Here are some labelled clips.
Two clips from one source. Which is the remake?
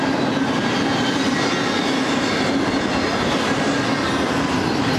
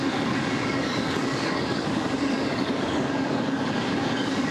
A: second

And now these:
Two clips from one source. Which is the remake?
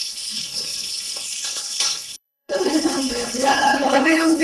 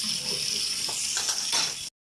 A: first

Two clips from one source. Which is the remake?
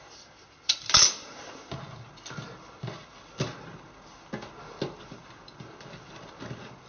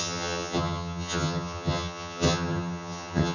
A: second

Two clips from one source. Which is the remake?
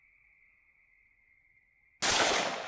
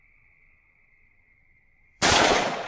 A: second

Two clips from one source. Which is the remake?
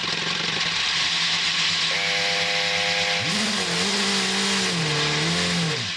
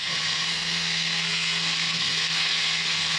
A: second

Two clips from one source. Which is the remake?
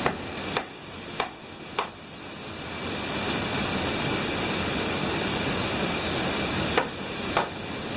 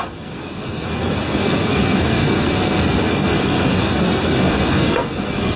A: second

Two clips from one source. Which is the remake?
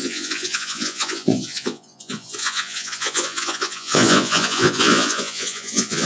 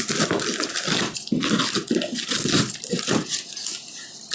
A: first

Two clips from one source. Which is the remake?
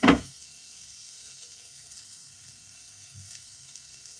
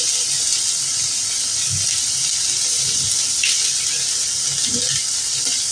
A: first